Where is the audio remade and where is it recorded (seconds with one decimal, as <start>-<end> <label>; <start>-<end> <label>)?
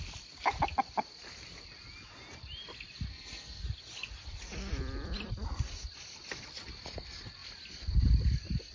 0.0-3.1 recorded; 3.1-3.6 remade; 3.6-8.7 recorded